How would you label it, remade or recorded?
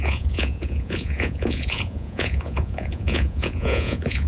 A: remade